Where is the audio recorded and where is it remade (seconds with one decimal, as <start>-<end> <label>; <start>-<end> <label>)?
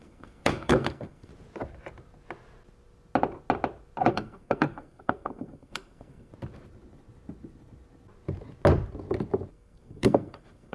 0.0-1.3 remade; 1.3-4.1 recorded; 4.1-6.3 remade; 6.3-9.5 recorded; 9.5-10.7 remade